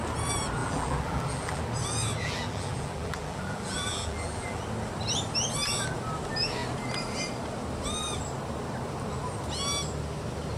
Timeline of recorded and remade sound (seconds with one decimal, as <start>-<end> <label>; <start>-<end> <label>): 0.0-0.6 recorded; 0.6-1.6 remade; 1.6-2.2 recorded; 2.2-4.6 remade; 4.6-10.6 recorded